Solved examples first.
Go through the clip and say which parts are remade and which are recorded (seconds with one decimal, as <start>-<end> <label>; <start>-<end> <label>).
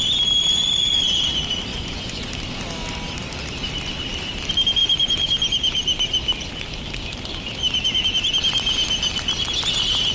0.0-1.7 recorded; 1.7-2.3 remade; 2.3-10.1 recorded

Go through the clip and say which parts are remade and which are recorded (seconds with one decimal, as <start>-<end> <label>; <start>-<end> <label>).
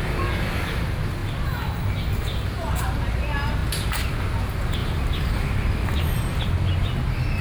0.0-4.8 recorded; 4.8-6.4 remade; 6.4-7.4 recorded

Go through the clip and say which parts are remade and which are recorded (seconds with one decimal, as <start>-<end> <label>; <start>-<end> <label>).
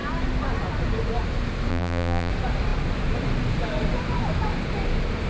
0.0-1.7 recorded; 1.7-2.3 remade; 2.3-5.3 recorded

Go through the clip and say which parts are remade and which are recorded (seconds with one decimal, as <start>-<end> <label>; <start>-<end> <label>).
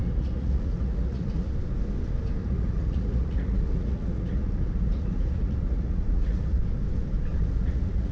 0.0-1.5 remade; 1.5-2.4 recorded; 2.4-6.6 remade; 6.6-7.3 recorded; 7.3-8.1 remade